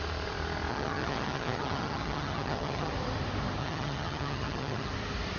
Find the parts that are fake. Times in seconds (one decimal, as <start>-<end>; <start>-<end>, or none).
0.7-2.9; 3.6-4.9